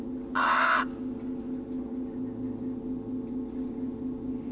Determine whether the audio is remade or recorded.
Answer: recorded